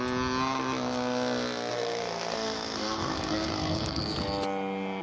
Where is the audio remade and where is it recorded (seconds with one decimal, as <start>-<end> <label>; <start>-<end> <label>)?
0.0-1.7 recorded; 1.7-4.0 remade; 4.0-5.0 recorded